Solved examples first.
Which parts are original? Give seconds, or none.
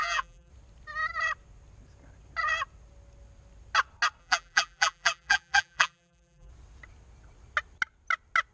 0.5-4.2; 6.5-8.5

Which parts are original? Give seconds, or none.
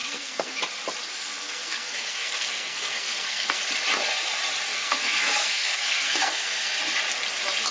0.6-1.1; 3.6-4.7; 6.8-7.7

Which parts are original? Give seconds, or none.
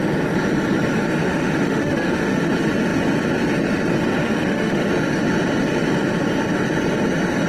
0.0-1.2; 2.5-4.2; 4.8-7.5